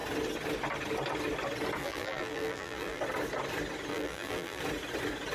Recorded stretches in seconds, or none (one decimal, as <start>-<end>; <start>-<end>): 0.0-1.8; 3.0-3.9; 4.6-5.3